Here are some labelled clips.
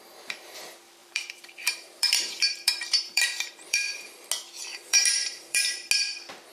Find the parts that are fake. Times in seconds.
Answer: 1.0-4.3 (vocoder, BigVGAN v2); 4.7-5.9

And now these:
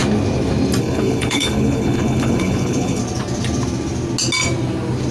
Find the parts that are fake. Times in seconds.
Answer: 0.8-3.0 (codec, HILCodec)

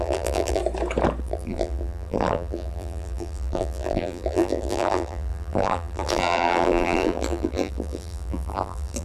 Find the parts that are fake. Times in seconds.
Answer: 0.0-0.6 (vocoder, BigVGAN v2); 1.2-9.0

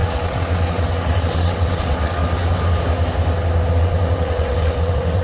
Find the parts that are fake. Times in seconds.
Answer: 0.0-2.2 (vocoder, WaveNeXt); 3.8-5.2